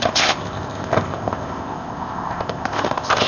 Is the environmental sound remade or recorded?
remade